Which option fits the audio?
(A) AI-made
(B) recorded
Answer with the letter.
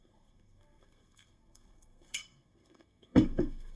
A